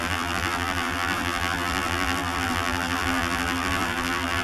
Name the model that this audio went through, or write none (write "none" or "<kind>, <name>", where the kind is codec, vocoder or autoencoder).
vocoder, BigVGAN v2